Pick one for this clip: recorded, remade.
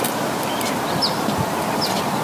recorded